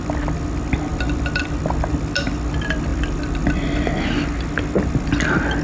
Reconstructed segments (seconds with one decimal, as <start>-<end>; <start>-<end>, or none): none

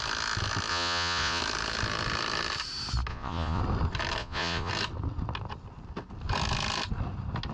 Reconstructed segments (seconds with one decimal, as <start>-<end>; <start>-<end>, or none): 0.7-1.4; 3.1-3.6; 4.2-4.7

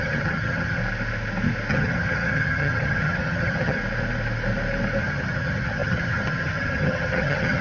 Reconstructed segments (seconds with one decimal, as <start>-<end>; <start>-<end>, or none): 0.0-0.8; 1.7-3.8; 5.0-7.6

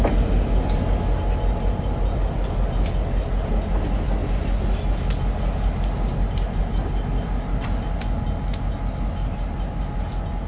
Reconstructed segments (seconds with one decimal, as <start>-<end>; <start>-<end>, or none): none